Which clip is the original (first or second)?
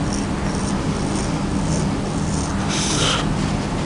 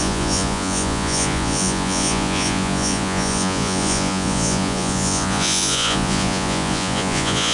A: first